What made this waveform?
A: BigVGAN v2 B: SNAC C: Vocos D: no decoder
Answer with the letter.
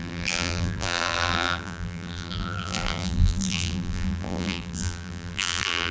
A